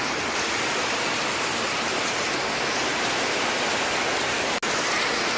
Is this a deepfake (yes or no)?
no